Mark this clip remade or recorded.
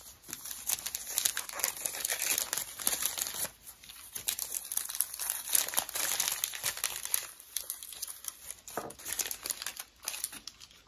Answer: recorded